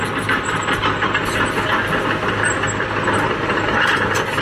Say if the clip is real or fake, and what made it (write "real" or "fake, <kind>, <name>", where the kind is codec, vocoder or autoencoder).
real